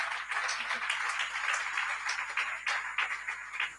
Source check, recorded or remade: recorded